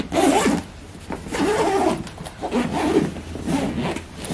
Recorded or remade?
recorded